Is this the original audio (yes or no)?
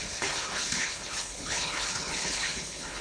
no